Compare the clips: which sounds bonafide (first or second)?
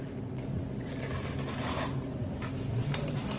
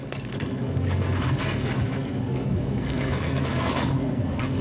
first